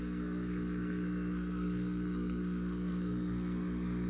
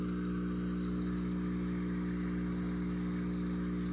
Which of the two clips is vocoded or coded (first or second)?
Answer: first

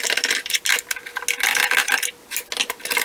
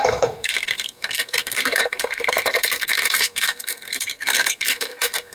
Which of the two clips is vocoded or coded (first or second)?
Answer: second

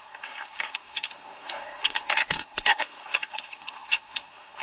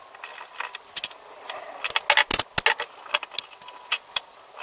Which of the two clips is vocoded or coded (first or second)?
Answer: first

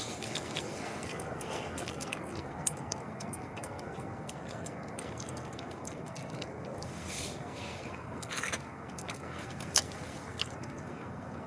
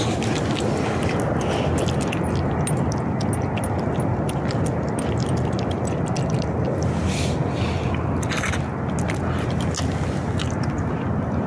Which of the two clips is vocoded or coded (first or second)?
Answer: first